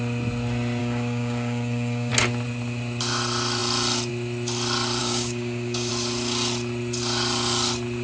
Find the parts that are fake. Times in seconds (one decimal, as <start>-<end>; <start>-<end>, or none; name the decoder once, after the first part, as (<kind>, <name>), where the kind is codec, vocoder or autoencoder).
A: 0.8-2.1 (codec, DAC); 5.0-5.9